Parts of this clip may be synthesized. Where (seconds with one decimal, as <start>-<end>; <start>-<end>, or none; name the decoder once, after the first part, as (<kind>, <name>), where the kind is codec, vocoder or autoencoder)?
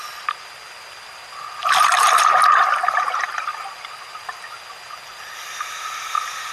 none